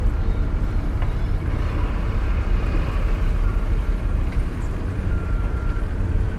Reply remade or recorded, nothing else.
remade